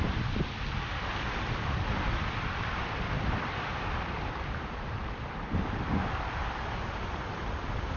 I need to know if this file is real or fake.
fake